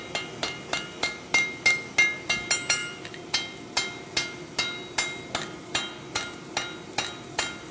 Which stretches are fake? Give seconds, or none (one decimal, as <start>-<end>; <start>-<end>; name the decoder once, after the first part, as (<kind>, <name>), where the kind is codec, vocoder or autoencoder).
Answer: none